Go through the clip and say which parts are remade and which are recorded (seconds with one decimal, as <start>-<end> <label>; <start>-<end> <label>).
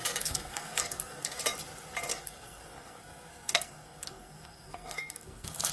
0.0-1.4 remade; 1.4-2.1 recorded; 2.1-5.7 remade